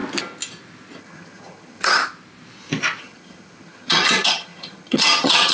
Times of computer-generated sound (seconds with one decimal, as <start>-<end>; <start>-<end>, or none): 1.0-2.0; 3.0-5.5